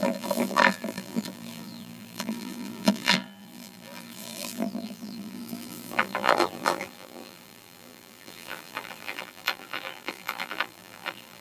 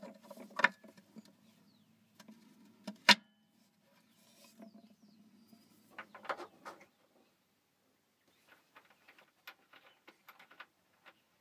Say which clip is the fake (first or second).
first